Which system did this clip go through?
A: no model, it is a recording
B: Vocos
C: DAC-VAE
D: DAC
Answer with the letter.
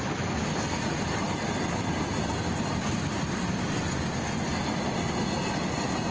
A